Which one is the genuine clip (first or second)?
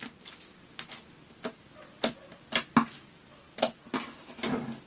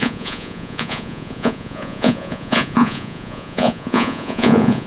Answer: first